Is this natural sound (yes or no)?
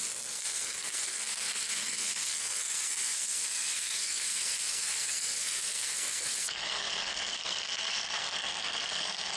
no